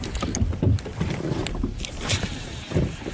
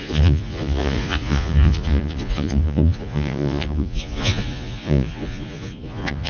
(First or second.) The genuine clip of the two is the first